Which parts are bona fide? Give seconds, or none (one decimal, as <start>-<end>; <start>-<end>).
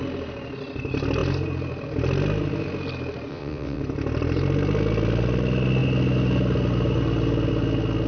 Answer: 0.0-3.3; 3.8-8.1